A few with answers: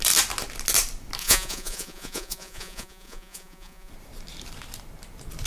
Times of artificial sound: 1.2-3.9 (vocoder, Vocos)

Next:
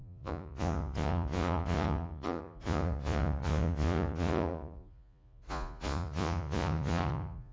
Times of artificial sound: 0.0-7.5 (vocoder, Vocos)

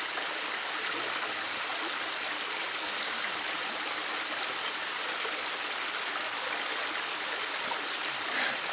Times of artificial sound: none

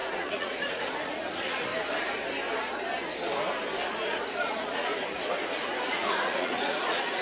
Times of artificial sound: 0.0-1.7 (vocoder, Vocos); 4.2-4.9; 5.9-7.2